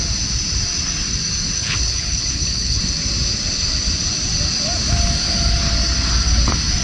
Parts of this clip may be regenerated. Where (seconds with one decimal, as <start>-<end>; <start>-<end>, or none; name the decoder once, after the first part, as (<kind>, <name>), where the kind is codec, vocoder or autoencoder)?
1.6-2.8 (codec, HILCodec)